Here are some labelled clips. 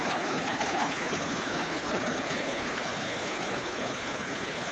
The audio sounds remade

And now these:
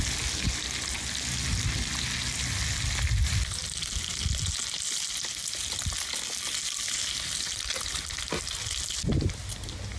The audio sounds recorded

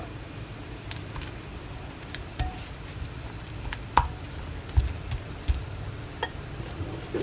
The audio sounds recorded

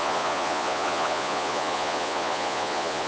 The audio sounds remade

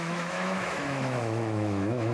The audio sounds remade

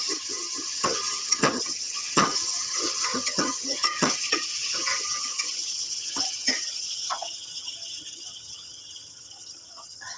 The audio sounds remade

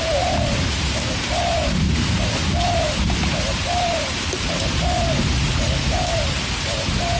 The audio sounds remade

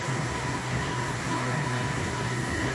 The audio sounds remade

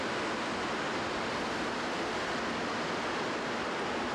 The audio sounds recorded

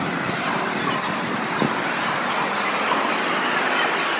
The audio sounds recorded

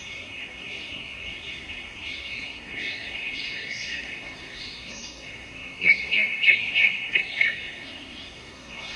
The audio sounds remade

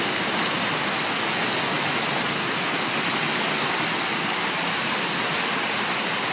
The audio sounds recorded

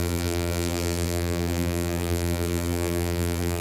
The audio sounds remade